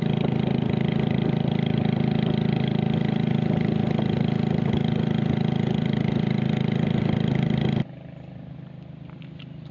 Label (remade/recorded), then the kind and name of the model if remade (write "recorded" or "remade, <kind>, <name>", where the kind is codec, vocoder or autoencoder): recorded